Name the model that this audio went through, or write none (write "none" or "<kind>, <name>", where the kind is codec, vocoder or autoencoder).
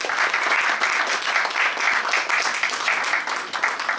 none